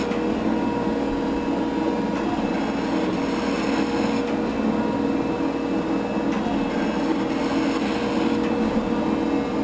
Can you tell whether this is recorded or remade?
recorded